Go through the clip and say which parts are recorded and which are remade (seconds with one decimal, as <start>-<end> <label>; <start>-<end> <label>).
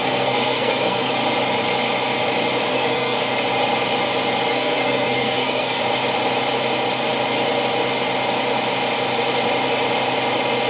0.0-1.1 remade; 1.1-2.7 recorded; 2.7-3.2 remade; 3.2-4.5 recorded; 4.5-5.8 remade; 5.8-10.7 recorded